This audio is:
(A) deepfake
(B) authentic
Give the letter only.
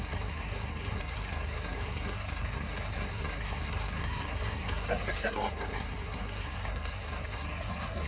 A